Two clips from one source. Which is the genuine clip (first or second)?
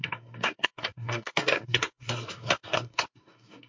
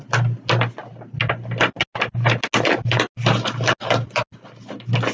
second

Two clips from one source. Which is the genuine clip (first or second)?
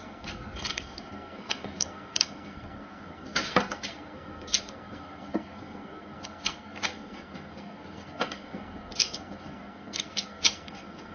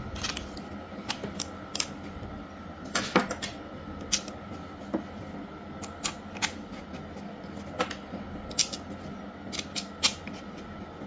second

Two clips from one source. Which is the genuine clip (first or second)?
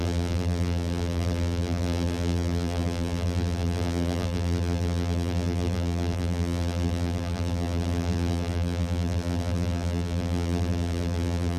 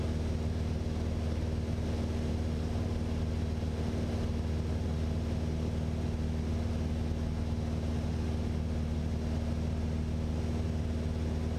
second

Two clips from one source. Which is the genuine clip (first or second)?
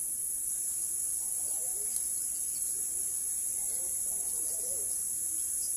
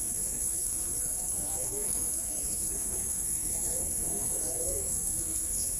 first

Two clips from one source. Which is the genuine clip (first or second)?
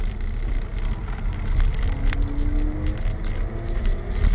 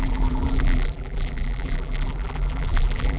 first